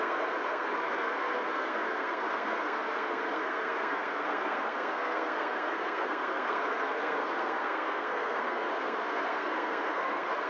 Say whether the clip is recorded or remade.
remade